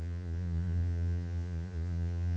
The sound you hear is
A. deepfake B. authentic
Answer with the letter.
A